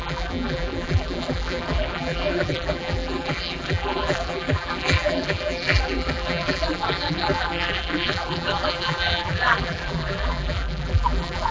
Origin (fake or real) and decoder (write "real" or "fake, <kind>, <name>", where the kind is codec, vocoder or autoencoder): fake, vocoder, BigVGAN v2